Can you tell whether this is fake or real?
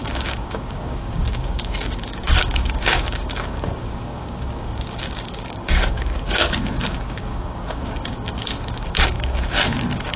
fake